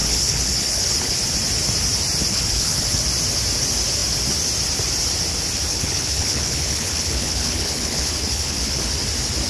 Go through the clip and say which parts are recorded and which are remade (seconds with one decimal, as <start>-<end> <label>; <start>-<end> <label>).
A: 0.0-1.1 remade; 1.1-2.3 recorded; 2.3-3.0 remade; 3.0-5.7 recorded; 5.7-8.8 remade; 8.8-9.5 recorded